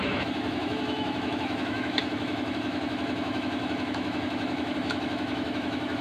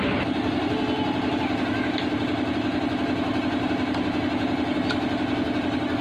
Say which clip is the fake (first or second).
first